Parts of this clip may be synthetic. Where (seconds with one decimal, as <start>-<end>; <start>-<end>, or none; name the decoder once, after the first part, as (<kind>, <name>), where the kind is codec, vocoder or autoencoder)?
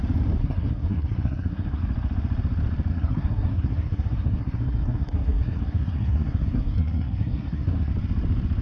0.4-1.8 (codec, SNAC); 2.9-7.9